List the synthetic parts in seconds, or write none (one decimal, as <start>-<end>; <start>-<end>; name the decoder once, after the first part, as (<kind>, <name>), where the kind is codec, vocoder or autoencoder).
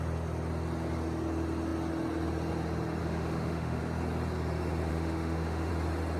3.0-3.8 (autoencoder, DAC-VAE); 4.9-5.7